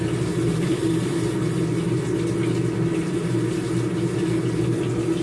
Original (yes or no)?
yes